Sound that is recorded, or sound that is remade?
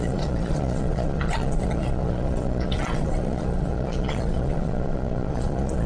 remade